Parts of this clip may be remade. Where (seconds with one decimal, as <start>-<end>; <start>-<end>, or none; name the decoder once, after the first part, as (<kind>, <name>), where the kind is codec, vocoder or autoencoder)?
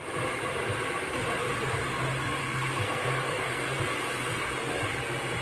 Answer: 2.4-3.8 (codec, SNAC)